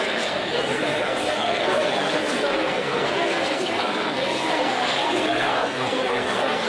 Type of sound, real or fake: fake